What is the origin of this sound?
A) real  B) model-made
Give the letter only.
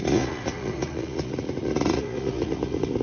B